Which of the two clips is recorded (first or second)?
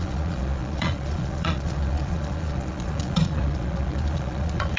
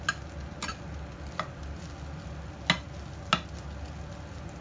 second